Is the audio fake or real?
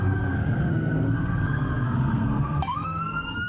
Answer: fake